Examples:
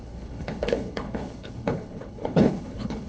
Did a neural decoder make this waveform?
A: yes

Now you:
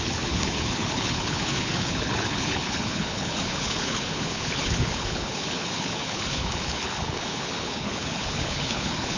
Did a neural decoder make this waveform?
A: yes